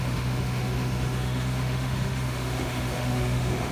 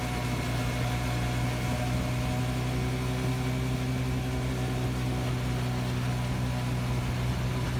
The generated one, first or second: first